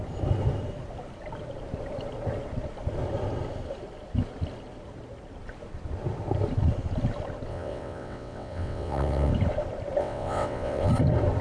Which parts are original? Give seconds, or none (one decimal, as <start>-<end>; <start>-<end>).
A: 0.0-7.5; 9.3-10.0; 10.9-11.4